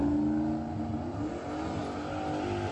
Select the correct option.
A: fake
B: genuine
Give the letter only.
B